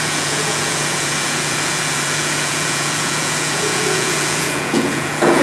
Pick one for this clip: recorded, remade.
remade